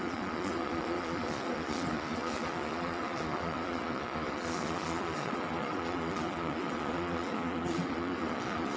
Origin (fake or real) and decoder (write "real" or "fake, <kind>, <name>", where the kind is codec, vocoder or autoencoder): fake, vocoder, Vocos